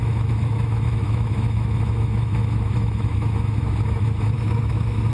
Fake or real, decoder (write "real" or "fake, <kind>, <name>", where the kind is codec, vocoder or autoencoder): fake, autoencoder, DAC-VAE